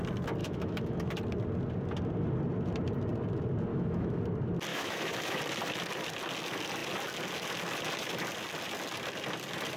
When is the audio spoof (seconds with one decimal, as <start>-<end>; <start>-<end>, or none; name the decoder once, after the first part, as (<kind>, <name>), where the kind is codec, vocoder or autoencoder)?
0.4-1.1 (autoencoder, DAC-VAE); 3.7-4.2; 4.7-5.4